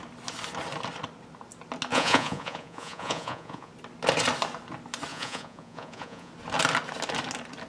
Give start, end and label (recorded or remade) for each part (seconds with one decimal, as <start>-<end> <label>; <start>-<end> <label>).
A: 0.0-1.9 recorded; 1.9-3.7 remade; 3.7-5.1 recorded; 5.1-6.3 remade; 6.3-7.7 recorded